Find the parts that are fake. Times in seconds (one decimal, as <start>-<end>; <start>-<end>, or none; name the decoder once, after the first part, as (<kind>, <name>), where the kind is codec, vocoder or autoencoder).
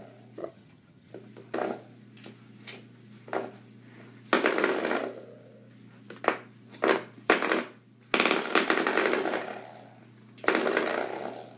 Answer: 0.4-1.1 (vocoder, HiFi-GAN)